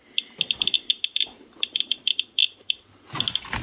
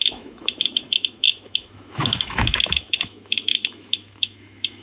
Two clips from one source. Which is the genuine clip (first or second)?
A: first